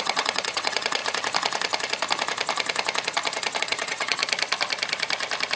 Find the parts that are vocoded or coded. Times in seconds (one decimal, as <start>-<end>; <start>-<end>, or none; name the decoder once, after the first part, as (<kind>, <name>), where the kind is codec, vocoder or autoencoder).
0.0-1.0 (vocoder, WaveNeXt); 3.6-4.2